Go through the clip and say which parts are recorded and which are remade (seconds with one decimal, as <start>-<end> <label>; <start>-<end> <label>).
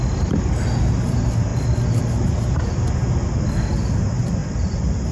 0.0-5.1 recorded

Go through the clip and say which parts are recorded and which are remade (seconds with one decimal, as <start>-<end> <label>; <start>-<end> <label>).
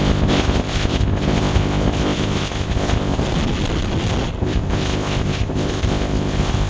0.0-3.2 remade; 3.2-4.4 recorded; 4.4-6.7 remade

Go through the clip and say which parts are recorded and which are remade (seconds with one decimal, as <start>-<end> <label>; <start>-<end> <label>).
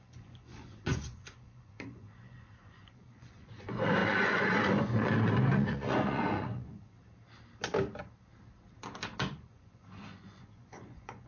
0.0-7.0 remade; 7.0-9.3 recorded; 9.3-11.3 remade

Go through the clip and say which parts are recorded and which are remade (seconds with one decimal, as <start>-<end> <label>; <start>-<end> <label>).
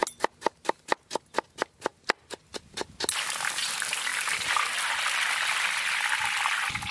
0.0-6.9 recorded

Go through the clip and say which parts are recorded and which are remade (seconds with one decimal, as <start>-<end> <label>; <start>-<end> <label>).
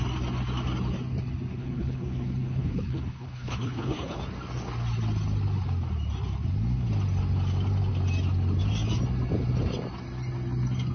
0.0-1.5 recorded; 1.5-4.2 remade; 4.2-10.9 recorded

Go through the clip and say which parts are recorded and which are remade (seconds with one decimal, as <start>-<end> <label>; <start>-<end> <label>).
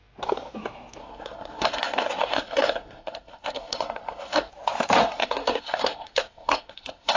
0.0-1.0 recorded; 1.0-4.5 remade; 4.5-5.0 recorded; 5.0-7.2 remade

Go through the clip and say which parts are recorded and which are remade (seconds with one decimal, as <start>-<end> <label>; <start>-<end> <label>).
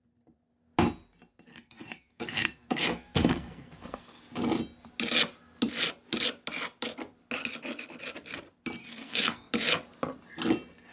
0.0-1.5 recorded; 1.5-4.2 remade; 4.2-8.8 recorded; 8.8-9.5 remade; 9.5-10.9 recorded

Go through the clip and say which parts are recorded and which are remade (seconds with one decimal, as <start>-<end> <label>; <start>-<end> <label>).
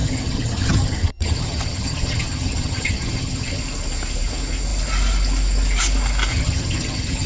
0.0-3.6 remade; 3.6-6.3 recorded; 6.3-7.3 remade